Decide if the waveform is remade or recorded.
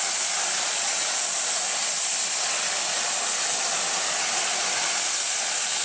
recorded